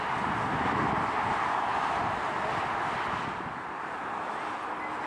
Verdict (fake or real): real